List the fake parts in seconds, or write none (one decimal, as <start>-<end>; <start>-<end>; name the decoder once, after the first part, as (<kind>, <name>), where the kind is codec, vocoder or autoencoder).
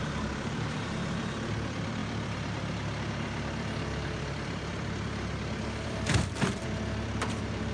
0.0-7.7 (vocoder, BigVGAN v2)